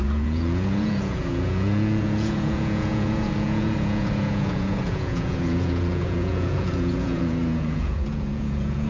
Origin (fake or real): fake